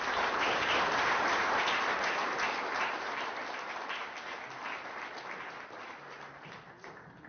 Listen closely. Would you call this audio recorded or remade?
recorded